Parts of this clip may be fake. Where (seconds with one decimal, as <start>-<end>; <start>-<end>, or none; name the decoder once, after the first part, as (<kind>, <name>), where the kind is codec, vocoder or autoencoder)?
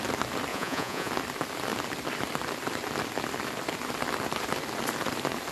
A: 0.5-1.1 (vocoder, Vocos)